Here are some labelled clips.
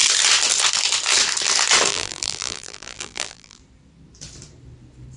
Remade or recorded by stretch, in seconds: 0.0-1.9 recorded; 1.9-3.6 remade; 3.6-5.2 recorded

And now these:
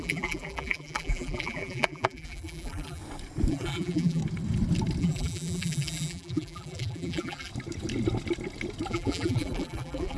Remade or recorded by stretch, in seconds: 0.0-3.0 remade; 3.0-3.5 recorded; 3.5-4.2 remade; 4.2-5.0 recorded; 5.0-7.5 remade; 7.5-8.9 recorded; 8.9-10.2 remade